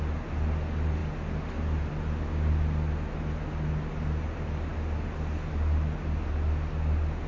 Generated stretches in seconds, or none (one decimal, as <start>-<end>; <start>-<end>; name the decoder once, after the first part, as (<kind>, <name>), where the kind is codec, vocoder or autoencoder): none

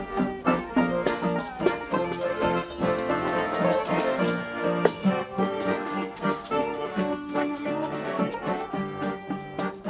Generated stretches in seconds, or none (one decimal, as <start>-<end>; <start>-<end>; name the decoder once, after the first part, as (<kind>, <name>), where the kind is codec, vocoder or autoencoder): 2.3-3.1 (codec, SNAC); 4.4-8.3